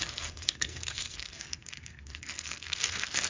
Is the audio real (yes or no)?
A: no